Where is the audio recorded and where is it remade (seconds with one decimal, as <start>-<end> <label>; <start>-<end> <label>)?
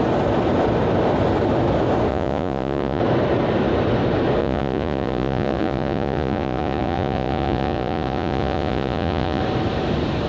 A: 0.0-2.1 recorded; 2.1-3.0 remade; 3.0-4.4 recorded; 4.4-9.4 remade; 9.4-10.3 recorded